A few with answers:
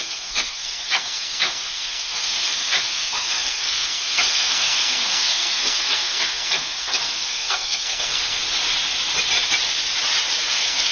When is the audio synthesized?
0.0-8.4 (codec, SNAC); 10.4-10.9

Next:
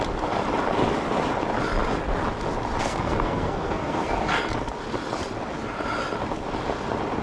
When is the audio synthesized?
2.8-4.4 (codec, SNAC)

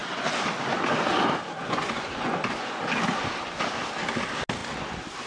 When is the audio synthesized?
1.6-2.8 (vocoder, Vocos)

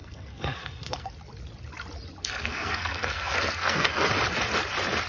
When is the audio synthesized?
0.0-1.1 (codec, SNAC); 2.2-4.1

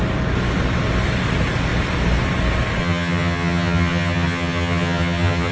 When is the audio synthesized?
2.8-5.5 (vocoder, HiFi-GAN)